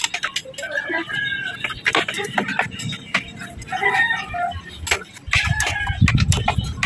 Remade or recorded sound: recorded